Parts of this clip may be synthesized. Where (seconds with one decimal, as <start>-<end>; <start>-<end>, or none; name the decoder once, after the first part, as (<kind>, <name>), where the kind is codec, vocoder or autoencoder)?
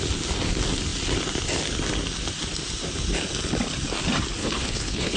4.4-5.2 (codec, HILCodec)